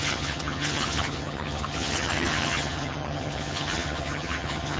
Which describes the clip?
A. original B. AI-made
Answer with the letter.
B